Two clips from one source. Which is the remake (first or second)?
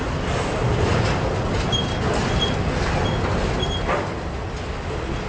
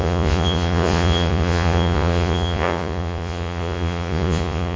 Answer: second